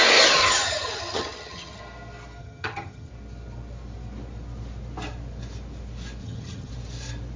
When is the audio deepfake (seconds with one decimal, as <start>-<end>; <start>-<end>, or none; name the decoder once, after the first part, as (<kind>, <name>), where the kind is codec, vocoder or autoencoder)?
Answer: 0.4-1.8 (vocoder, HiFi-GAN); 2.4-3.1; 6.2-6.7